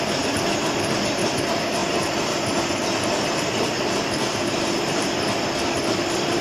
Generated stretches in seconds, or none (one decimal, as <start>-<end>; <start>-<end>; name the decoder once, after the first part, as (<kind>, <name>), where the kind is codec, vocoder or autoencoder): 0.0-6.4 (vocoder, BigVGAN v2)